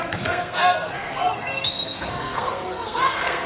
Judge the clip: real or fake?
fake